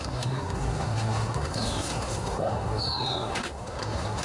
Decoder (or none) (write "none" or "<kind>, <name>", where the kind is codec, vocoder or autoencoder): codec, SNAC